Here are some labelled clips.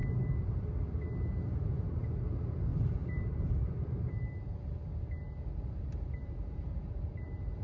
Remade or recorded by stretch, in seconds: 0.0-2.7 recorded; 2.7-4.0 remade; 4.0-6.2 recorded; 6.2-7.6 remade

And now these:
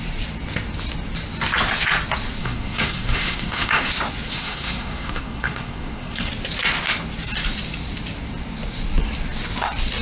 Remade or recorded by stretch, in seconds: 0.0-2.4 recorded; 2.4-3.9 remade; 3.9-4.3 recorded; 4.3-6.3 remade; 6.3-10.0 recorded

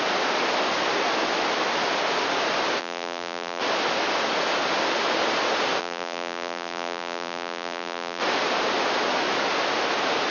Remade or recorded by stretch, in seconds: 0.0-2.8 recorded; 2.8-3.6 remade; 3.6-5.8 recorded; 5.8-8.2 remade; 8.2-10.3 recorded

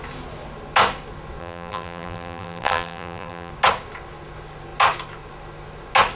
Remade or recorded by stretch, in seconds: 0.0-1.4 recorded; 1.4-3.5 remade; 3.5-6.2 recorded